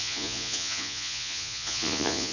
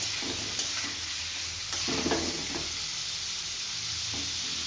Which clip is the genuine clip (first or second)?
second